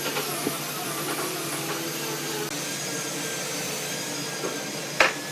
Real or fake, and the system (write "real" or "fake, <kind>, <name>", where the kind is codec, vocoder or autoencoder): real